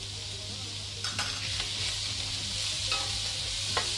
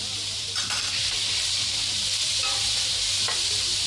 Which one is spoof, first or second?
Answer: second